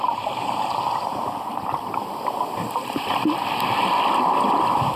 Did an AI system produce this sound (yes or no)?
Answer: no